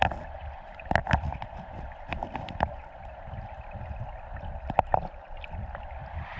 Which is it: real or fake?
real